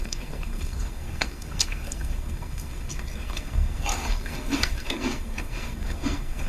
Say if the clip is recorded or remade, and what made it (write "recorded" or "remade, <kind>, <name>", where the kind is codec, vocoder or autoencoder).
remade, codec, SNAC